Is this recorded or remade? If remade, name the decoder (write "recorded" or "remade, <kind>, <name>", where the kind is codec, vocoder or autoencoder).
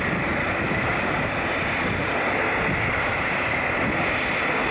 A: recorded